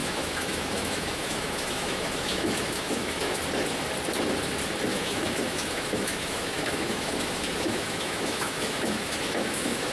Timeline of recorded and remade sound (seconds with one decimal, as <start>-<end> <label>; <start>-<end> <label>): 0.0-3.4 remade; 3.4-4.9 recorded; 4.9-9.9 remade